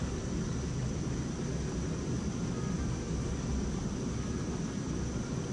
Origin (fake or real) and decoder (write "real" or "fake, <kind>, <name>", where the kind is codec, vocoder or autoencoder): real